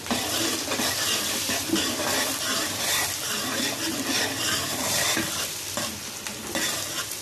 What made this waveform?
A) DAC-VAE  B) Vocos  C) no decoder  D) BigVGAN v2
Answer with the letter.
D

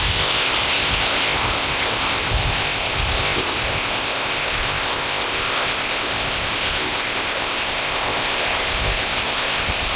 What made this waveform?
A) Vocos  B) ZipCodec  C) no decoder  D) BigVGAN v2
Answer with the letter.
B